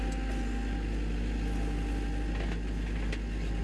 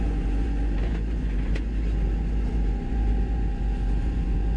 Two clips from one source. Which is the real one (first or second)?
first